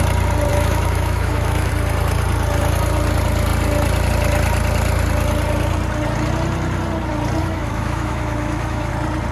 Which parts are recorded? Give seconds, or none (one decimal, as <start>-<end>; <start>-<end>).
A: 0.0-0.5; 1.7-7.4; 8.9-9.3